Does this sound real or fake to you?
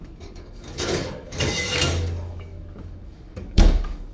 fake